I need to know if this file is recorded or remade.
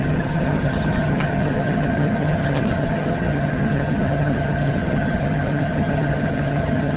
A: remade